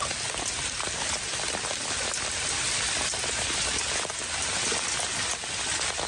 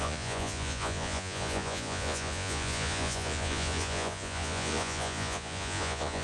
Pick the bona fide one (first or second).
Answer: first